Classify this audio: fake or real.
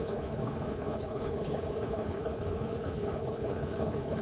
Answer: fake